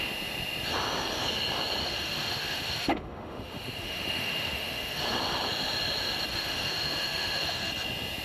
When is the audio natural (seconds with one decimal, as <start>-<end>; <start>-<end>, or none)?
0.0-1.8; 5.0-6.3; 7.7-8.2